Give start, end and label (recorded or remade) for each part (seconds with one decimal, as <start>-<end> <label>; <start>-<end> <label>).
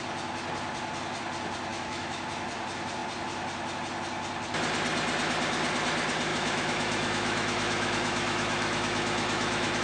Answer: 0.0-1.7 recorded; 1.7-2.2 remade; 2.2-6.3 recorded; 6.3-9.8 remade